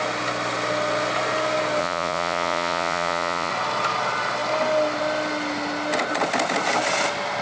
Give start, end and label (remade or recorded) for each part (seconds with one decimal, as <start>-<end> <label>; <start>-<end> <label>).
0.0-1.8 recorded; 1.8-3.5 remade; 3.5-7.4 recorded